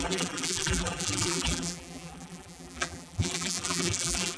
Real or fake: fake